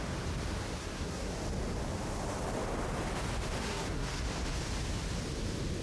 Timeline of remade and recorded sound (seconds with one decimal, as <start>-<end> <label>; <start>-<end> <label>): 0.0-0.8 recorded; 0.8-1.3 remade; 1.3-3.6 recorded; 3.6-4.2 remade; 4.2-5.8 recorded